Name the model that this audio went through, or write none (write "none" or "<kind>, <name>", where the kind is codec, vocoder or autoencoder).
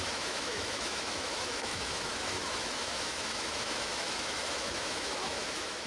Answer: autoencoder, DAC-VAE